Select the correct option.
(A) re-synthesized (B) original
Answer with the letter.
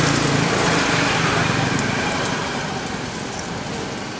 B